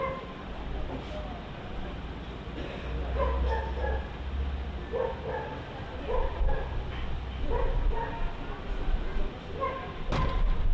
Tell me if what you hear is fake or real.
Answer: real